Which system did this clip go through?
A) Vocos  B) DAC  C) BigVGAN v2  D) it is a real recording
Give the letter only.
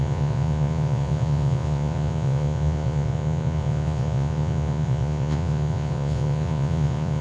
A